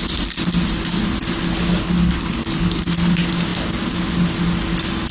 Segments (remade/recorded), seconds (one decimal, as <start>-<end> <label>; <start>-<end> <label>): 0.0-1.8 recorded; 1.8-2.9 remade; 2.9-5.1 recorded